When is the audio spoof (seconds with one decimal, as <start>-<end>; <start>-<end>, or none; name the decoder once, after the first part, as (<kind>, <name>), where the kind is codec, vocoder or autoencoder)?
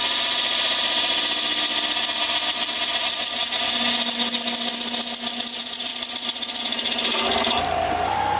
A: none